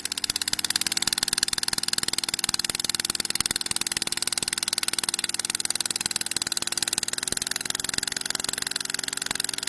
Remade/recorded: recorded